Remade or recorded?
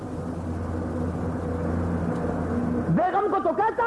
recorded